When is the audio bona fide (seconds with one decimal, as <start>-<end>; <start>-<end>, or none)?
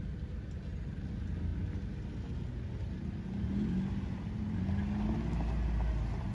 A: 0.0-6.3